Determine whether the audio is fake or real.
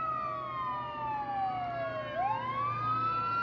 real